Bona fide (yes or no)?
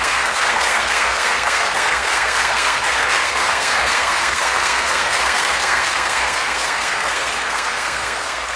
no